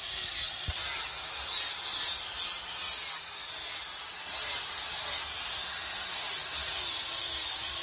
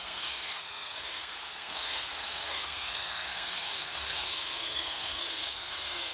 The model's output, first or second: second